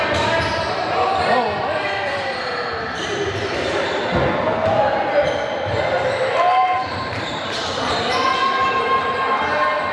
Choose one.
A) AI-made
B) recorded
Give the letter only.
A